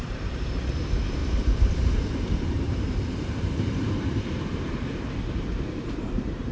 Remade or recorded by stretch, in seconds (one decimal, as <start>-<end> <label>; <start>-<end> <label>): 0.0-6.5 remade